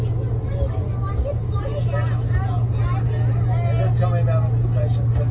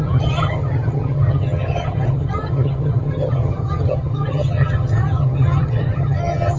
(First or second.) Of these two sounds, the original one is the first